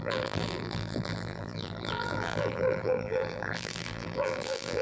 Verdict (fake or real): fake